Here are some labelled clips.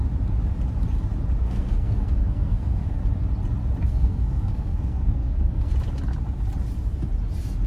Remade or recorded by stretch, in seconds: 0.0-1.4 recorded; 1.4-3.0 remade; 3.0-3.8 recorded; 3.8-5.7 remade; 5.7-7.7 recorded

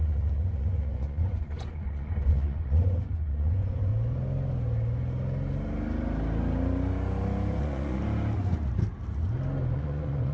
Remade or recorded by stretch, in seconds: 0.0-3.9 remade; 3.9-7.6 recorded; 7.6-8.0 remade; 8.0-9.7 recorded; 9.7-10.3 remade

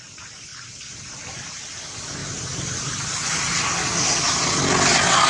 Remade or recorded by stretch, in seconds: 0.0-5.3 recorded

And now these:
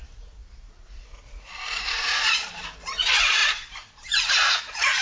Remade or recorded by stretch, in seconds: 0.0-3.4 remade; 3.4-4.3 recorded; 4.3-5.0 remade

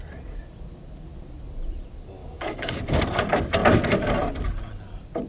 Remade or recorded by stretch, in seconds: 0.0-2.2 recorded; 2.2-2.8 remade; 2.8-5.3 recorded